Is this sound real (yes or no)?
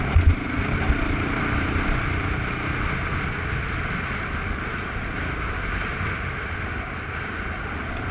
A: yes